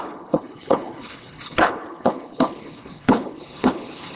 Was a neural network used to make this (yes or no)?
yes